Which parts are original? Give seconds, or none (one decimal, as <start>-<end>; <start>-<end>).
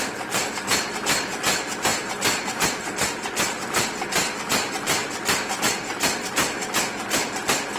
0.0-7.8